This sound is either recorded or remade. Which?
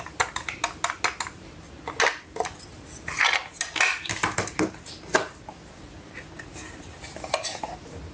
recorded